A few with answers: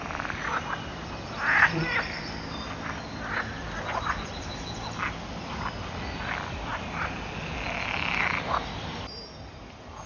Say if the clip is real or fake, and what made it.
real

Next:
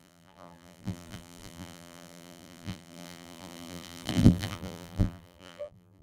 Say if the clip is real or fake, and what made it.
fake, vocoder, BigVGAN v2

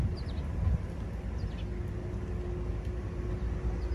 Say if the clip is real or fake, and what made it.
real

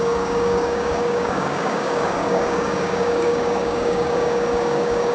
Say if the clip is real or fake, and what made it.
fake, codec, DAC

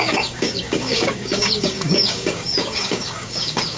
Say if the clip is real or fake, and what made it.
fake, codec, DAC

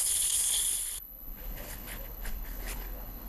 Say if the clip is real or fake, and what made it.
fake, codec, HILCodec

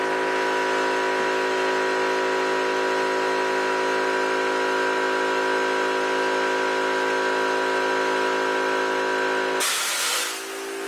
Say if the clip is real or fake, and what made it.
real